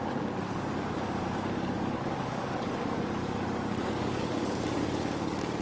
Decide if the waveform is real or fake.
fake